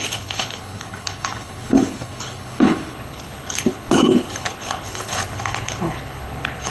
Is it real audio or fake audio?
fake